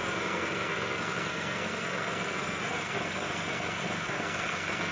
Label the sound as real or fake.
fake